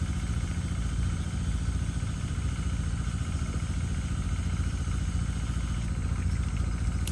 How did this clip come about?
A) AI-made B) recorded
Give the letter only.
B